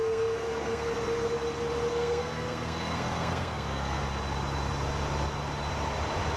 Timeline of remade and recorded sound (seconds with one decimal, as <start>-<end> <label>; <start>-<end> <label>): 0.0-0.9 remade; 0.9-1.9 recorded; 1.9-4.0 remade; 4.0-6.4 recorded